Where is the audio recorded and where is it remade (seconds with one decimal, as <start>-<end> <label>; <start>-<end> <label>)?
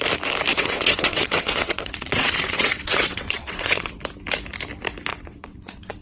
0.0-0.5 recorded; 0.5-4.0 remade; 4.0-5.1 recorded; 5.1-6.0 remade